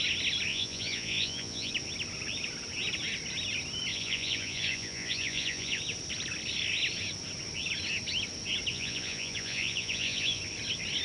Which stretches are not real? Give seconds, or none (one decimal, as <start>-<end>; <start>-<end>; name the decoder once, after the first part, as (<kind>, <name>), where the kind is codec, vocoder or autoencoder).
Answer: 0.5-1.7 (vocoder, Vocos); 3.9-5.8; 8.7-10.4